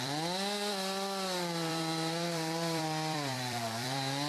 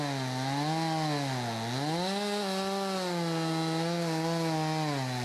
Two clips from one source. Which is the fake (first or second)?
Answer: first